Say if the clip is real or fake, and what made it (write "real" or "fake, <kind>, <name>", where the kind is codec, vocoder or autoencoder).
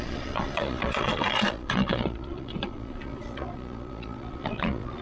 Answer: fake, vocoder, Vocos